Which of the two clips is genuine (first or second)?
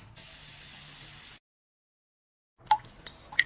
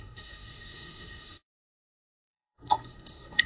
first